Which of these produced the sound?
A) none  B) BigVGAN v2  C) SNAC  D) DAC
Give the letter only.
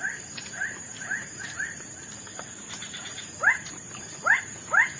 B